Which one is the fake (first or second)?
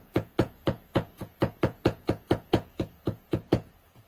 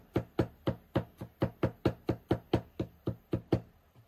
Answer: first